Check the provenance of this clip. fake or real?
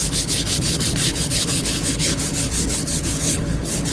fake